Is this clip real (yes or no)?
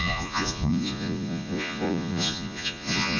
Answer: no